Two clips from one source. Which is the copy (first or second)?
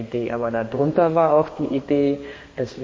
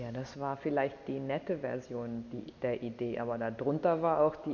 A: first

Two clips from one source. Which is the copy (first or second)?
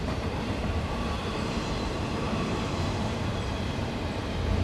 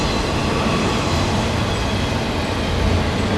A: first